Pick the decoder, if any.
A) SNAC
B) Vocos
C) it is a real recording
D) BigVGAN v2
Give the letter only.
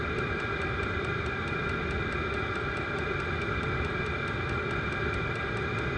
C